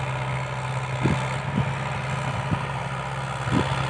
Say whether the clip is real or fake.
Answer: real